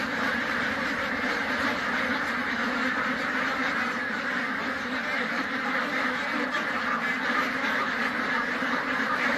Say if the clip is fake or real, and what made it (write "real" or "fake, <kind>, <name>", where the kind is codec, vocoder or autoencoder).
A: fake, vocoder, BigVGAN v2